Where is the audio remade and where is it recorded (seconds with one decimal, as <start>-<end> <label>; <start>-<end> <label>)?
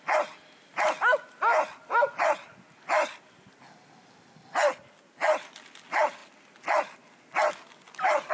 0.0-8.3 recorded